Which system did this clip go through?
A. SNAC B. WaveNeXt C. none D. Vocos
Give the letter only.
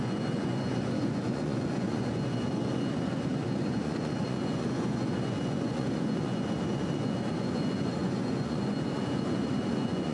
D